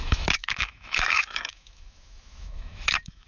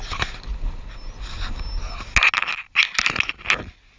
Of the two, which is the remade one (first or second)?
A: first